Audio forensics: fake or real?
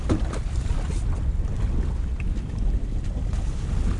real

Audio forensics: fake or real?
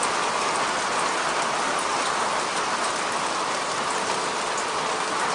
real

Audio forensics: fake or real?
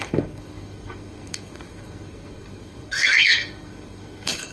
fake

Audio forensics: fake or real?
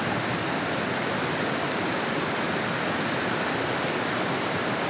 real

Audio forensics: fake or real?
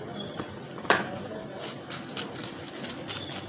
real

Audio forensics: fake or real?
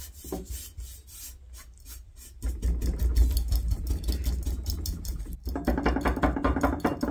real